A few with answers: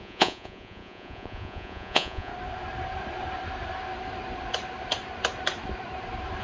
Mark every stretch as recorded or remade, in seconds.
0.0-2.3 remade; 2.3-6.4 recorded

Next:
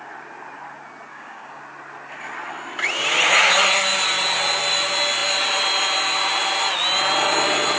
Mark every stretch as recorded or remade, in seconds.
0.0-1.1 recorded; 1.1-1.6 remade; 1.6-7.8 recorded

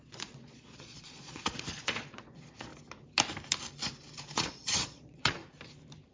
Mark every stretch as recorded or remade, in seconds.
0.0-2.7 remade; 2.7-4.2 recorded; 4.2-5.4 remade; 5.4-6.1 recorded